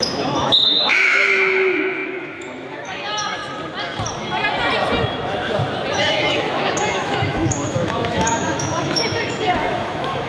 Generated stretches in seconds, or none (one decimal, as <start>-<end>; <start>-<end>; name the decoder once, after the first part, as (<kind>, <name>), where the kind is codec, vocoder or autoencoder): 0.0-3.4 (autoencoder, DAC-VAE); 5.9-10.3